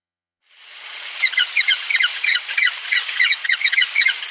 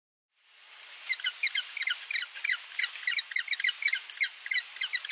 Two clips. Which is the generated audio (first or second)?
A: first